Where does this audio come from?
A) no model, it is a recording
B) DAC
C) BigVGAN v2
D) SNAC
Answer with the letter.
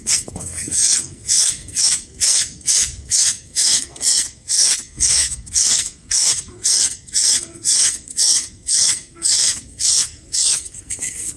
D